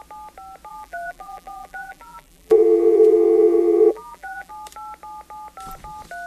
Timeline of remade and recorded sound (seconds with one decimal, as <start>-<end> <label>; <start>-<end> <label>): 0.0-0.7 recorded; 0.7-4.5 remade; 4.5-6.3 recorded